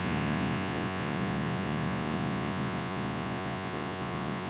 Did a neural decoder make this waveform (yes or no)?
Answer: yes